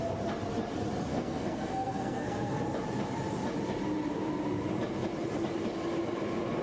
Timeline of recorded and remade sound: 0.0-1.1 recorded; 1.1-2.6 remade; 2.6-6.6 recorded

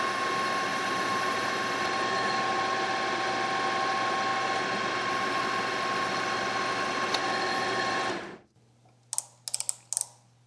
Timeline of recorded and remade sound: 0.0-0.7 recorded; 0.7-1.5 remade; 1.5-10.5 recorded

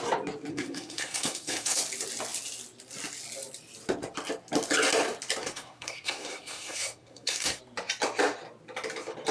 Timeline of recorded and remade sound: 0.0-0.5 recorded; 0.5-1.8 remade; 1.8-5.4 recorded; 5.4-7.6 remade; 7.6-9.3 recorded

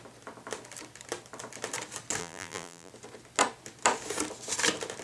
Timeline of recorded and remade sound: 0.0-2.2 recorded; 2.2-2.9 remade; 2.9-5.0 recorded

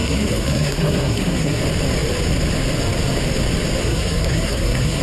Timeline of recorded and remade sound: 0.0-1.6 remade; 1.6-3.8 recorded; 3.8-5.0 remade

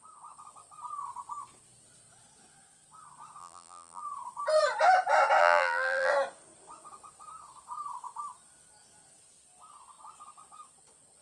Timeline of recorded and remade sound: 0.0-3.4 recorded; 3.4-4.0 remade; 4.0-5.4 recorded; 5.4-6.1 remade; 6.1-11.2 recorded

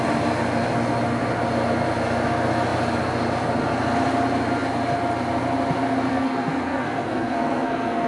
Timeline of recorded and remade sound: 0.0-6.1 recorded; 6.1-8.1 remade